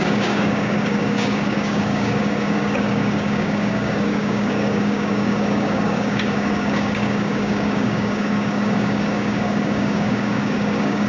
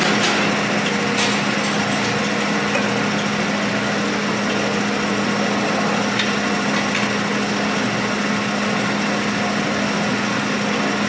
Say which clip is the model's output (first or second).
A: first